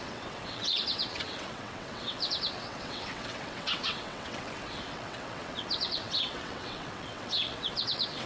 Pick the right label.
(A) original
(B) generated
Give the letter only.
B